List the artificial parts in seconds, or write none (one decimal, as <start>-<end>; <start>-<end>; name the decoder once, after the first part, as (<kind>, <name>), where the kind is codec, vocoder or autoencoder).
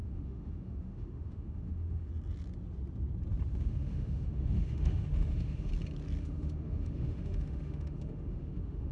0.0-2.1 (autoencoder, DAC-VAE); 3.5-5.7; 6.2-8.9